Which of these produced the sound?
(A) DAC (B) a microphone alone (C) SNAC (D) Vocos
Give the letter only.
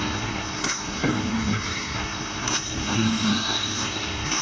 C